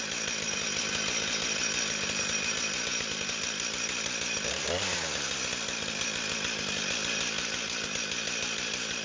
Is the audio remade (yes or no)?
no